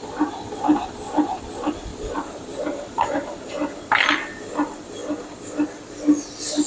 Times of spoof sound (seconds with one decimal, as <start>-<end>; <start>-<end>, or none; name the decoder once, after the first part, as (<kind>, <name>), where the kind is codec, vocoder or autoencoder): 1.9-3.5 (vocoder, BigVGAN v2)